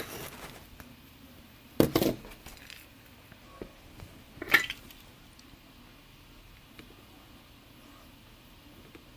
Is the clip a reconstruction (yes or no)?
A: no